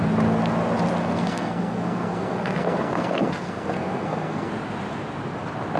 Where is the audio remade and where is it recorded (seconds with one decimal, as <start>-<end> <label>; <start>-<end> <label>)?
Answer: 0.0-1.0 recorded; 1.0-4.5 remade; 4.5-5.8 recorded